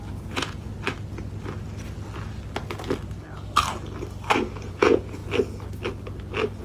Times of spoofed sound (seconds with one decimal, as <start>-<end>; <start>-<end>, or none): 0.0-0.7; 4.7-5.2